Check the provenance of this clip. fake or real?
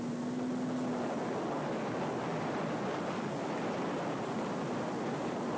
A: real